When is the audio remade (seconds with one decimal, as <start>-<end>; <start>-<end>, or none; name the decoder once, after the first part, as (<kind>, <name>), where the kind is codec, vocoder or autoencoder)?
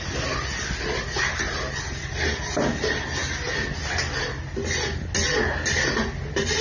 none